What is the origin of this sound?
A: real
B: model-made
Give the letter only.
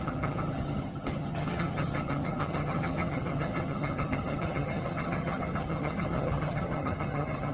B